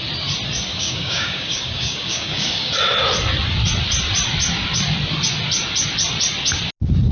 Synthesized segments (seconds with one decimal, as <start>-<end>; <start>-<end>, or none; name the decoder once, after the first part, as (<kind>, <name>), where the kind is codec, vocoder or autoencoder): 0.7-2.7 (codec, DAC)